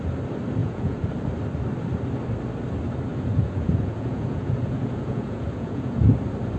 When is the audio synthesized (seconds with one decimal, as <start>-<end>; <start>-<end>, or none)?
0.6-1.1; 3.1-6.1